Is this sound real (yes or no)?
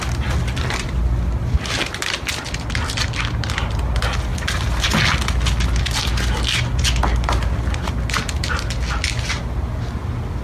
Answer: yes